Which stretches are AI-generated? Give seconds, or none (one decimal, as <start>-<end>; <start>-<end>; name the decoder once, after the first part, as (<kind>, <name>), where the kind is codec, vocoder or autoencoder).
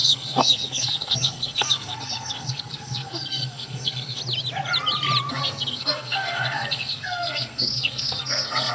0.0-4.2 (codec, SNAC); 5.3-8.7